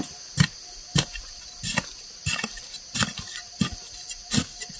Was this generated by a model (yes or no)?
no